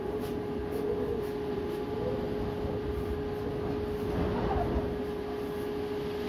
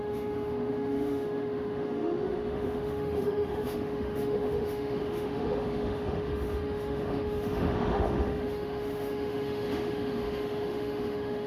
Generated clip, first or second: second